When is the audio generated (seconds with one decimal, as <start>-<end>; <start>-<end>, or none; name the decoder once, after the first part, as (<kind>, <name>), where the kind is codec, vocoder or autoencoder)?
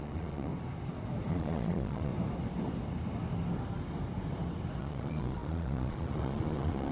0.0-0.5 (vocoder, Vocos); 1.3-2.1; 4.8-6.9